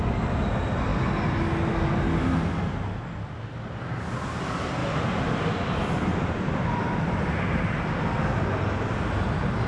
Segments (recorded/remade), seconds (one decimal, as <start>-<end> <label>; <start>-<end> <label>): 0.0-4.8 recorded; 4.8-5.6 remade; 5.6-6.1 recorded; 6.1-7.4 remade; 7.4-9.7 recorded